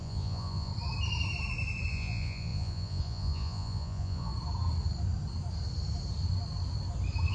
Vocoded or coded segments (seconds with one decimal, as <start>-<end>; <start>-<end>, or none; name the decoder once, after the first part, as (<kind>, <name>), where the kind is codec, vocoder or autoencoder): 0.0-0.7 (vocoder, Vocos); 1.9-4.3